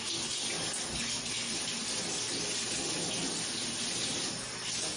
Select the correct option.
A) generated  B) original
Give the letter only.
B